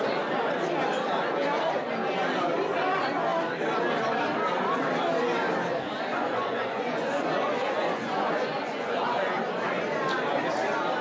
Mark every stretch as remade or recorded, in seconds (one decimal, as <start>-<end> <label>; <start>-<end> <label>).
0.0-6.1 recorded; 6.1-9.4 remade; 9.4-11.0 recorded